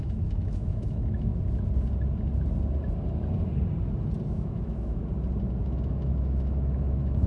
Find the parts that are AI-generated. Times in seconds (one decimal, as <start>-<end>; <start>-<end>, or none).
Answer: 0.0-1.3; 4.3-5.0; 5.6-7.3